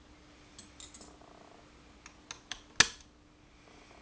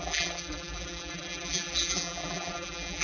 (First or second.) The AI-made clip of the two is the second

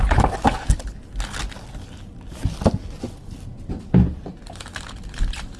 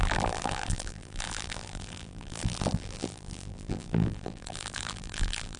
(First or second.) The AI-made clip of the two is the second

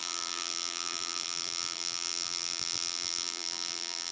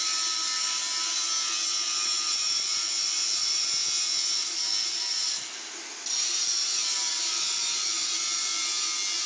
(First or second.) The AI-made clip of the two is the first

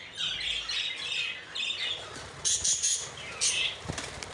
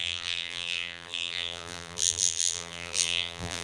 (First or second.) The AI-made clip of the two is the second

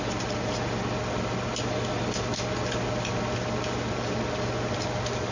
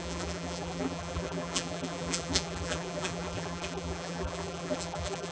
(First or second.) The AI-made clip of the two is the second